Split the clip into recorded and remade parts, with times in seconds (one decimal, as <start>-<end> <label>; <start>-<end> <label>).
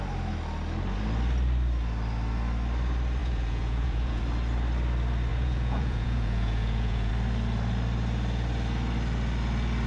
0.0-3.2 recorded; 3.2-4.2 remade; 4.2-5.3 recorded; 5.3-7.1 remade; 7.1-9.9 recorded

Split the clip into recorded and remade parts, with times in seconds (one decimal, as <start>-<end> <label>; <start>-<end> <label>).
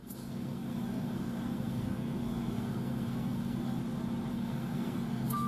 0.0-3.8 remade; 3.8-4.3 recorded; 4.3-5.5 remade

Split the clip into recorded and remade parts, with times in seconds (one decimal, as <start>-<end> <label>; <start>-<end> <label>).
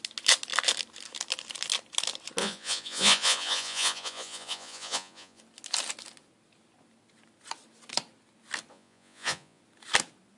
0.0-2.4 recorded; 2.4-5.4 remade; 5.4-8.7 recorded; 8.7-9.6 remade; 9.6-10.4 recorded